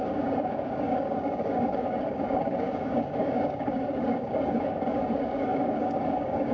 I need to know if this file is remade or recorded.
remade